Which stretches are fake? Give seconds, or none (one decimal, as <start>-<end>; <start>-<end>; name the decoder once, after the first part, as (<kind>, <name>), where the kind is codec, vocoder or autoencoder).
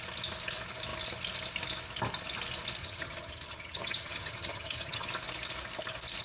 2.8-5.1 (vocoder, HiFi-GAN)